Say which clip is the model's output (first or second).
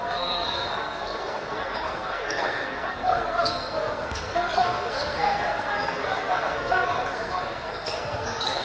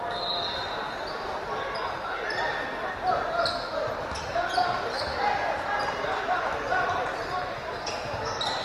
first